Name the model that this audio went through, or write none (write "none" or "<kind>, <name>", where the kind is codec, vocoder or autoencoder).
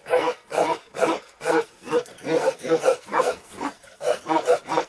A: codec, SNAC